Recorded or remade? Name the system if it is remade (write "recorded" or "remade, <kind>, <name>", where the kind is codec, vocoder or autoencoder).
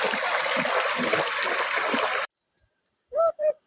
remade, vocoder, BigVGAN v2